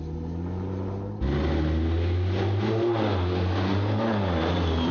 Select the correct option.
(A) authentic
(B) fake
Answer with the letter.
A